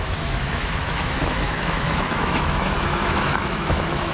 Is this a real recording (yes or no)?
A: no